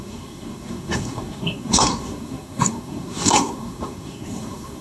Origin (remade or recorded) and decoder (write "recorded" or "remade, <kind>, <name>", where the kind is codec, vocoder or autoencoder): remade, codec, SNAC